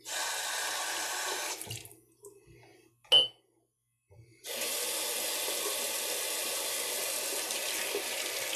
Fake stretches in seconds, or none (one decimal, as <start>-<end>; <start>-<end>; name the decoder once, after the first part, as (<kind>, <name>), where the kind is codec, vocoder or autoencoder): none